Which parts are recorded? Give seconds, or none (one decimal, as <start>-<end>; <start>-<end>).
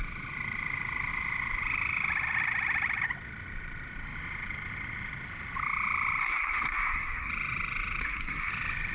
0.0-6.2; 7.3-8.0; 8.5-8.9